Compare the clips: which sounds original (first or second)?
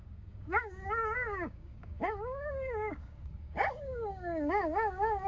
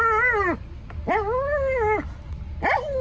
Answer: second